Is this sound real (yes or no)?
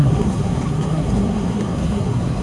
no